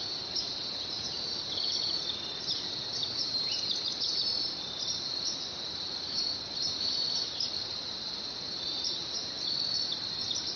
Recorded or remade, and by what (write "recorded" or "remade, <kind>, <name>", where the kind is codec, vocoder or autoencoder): remade, vocoder, BigVGAN v2